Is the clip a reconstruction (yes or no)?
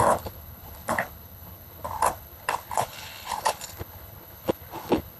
yes